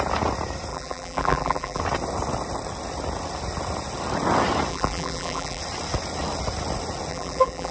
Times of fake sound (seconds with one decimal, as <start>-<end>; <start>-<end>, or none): 0.7-1.8; 4.7-5.6; 7.1-7.7